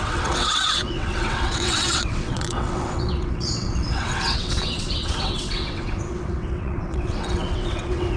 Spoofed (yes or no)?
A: yes